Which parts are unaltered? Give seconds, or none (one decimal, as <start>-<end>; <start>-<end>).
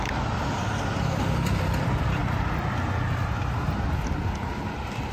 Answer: 2.2-5.1